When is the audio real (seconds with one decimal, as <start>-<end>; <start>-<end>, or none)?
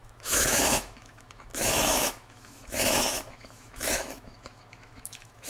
none